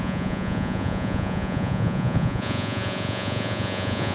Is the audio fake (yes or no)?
yes